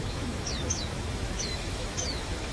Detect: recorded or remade remade